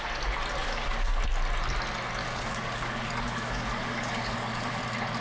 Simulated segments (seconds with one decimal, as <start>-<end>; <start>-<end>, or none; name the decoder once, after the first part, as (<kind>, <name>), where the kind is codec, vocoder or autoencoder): 0.6-1.2 (codec, DAC); 2.2-4.8